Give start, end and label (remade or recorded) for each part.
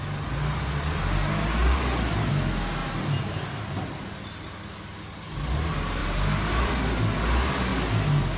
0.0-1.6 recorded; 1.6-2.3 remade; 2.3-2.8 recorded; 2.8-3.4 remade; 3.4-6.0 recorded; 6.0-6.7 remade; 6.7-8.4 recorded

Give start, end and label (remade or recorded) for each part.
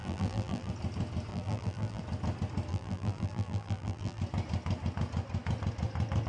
0.0-0.7 remade; 0.7-1.3 recorded; 1.3-2.0 remade; 2.0-2.7 recorded; 2.7-4.2 remade; 4.2-6.3 recorded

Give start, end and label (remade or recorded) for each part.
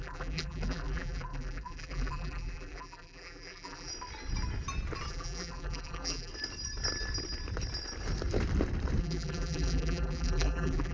0.0-3.9 remade; 3.9-5.1 recorded; 5.1-6.3 remade; 6.3-9.0 recorded; 9.0-10.9 remade